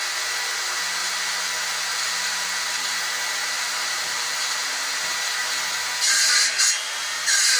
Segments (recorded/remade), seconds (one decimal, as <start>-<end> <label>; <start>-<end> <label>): 0.0-1.0 recorded; 1.0-2.9 remade; 2.9-3.4 recorded; 3.4-5.0 remade; 5.0-7.6 recorded